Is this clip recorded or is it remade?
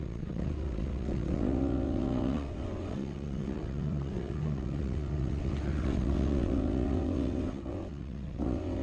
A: remade